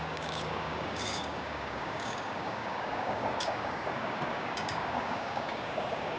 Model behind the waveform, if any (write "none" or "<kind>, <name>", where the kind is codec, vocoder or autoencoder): codec, DAC